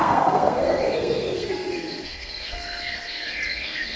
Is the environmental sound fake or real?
fake